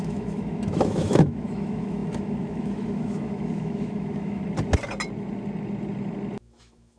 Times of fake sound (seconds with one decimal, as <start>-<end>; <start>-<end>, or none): 0.0-4.4; 6.4-7.0

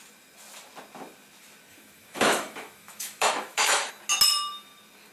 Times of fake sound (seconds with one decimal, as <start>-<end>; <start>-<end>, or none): 1.7-3.9

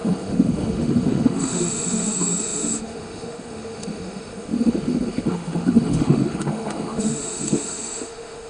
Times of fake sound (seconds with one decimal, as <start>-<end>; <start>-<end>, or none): 0.0-8.5

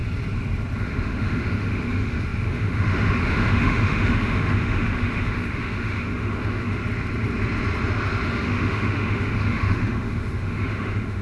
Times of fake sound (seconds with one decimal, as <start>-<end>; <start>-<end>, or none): 0.8-6.8; 8.3-11.2

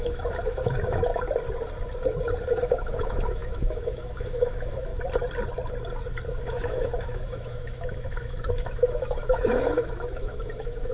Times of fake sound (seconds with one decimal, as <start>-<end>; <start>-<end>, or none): 0.0-1.1; 2.5-4.9; 6.3-10.9

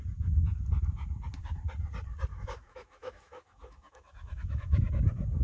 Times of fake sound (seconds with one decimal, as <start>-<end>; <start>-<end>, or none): 2.3-4.9

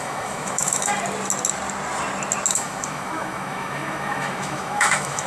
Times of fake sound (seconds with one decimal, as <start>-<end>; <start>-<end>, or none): 0.0-0.9; 2.5-5.3

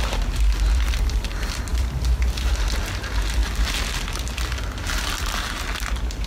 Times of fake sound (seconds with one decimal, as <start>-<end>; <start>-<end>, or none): none